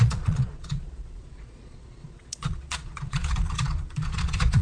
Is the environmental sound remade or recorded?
remade